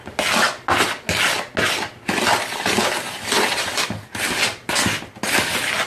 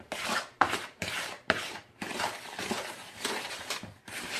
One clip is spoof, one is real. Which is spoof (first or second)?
second